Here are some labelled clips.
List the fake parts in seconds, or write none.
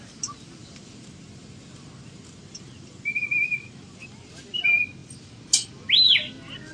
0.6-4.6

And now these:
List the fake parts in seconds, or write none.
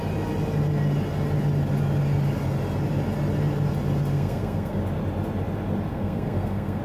4.1-4.8; 5.9-6.8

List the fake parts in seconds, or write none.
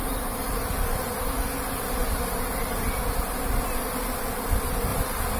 0.0-1.1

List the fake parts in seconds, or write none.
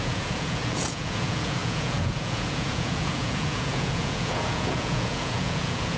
0.0-6.0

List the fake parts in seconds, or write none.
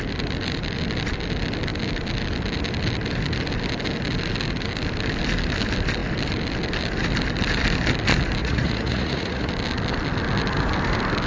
8.4-9.5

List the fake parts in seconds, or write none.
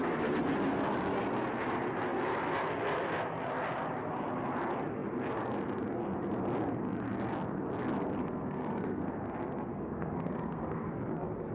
8.2-9.1; 9.7-11.0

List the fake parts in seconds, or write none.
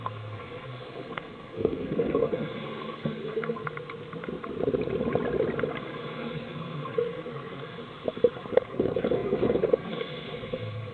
0.0-3.6; 5.9-7.8; 8.5-10.9